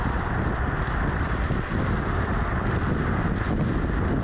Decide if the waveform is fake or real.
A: real